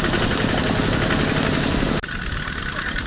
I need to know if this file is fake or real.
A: real